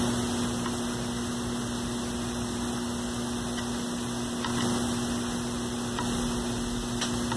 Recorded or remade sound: recorded